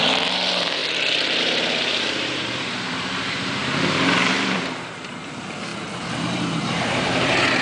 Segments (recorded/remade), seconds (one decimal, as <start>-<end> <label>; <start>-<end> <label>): 0.0-0.8 remade; 0.8-1.4 recorded; 1.4-5.7 remade; 5.7-6.6 recorded; 6.6-7.6 remade